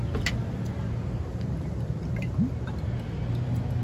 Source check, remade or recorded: recorded